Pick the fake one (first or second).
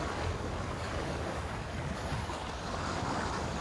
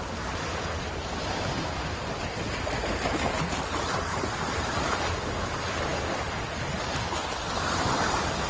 first